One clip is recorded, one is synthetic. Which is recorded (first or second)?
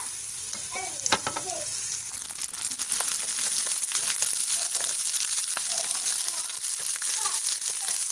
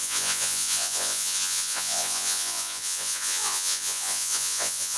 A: first